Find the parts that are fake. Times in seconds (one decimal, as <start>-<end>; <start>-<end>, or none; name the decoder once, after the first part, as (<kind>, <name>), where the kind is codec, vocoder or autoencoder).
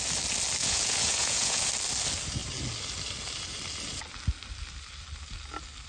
0.6-1.6 (vocoder, Vocos)